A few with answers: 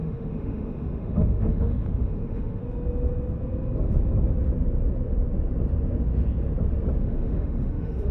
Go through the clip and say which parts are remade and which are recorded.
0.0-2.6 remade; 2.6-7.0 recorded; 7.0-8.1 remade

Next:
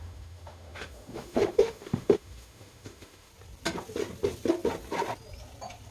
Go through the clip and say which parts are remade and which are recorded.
0.0-3.3 remade; 3.3-5.9 recorded

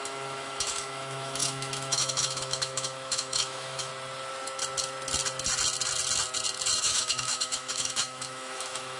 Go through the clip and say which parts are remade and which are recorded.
0.0-3.9 remade; 3.9-6.8 recorded; 6.8-9.0 remade

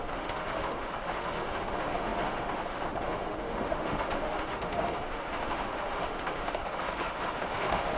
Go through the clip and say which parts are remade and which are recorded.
0.0-8.0 remade